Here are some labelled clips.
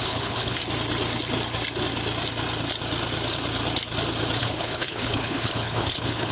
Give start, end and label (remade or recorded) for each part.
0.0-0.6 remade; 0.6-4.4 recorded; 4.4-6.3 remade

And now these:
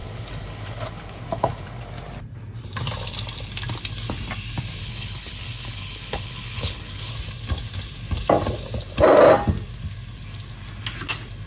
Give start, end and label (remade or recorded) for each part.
0.0-1.8 remade; 1.8-4.8 recorded; 4.8-7.1 remade; 7.1-11.5 recorded

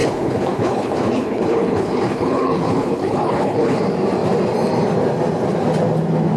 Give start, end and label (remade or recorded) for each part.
0.0-3.8 remade; 3.8-6.4 recorded

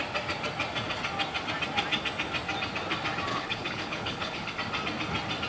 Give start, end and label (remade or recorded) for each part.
0.0-3.3 recorded; 3.3-4.5 remade; 4.5-5.5 recorded

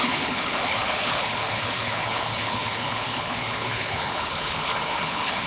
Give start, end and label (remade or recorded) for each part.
0.0-5.5 remade

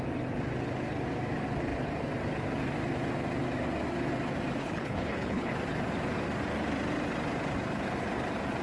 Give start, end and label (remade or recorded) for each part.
0.0-4.6 recorded; 4.6-5.5 remade; 5.5-8.6 recorded

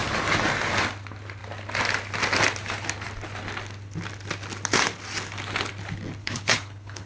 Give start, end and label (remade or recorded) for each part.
0.0-6.2 recorded; 6.2-7.1 remade

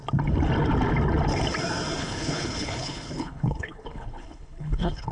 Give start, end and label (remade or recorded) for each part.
0.0-2.0 recorded; 2.0-5.1 remade